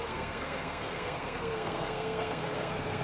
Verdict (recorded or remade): remade